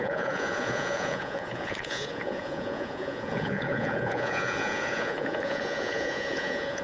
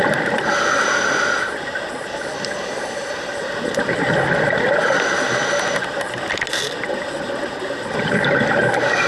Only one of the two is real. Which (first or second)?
second